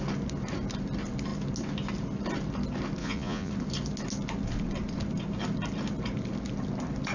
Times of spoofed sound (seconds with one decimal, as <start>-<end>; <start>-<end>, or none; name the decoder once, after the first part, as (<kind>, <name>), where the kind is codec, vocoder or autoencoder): 3.0-3.5 (vocoder, Vocos)